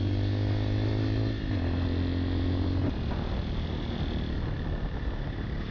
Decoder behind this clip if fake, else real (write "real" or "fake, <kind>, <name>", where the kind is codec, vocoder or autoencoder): real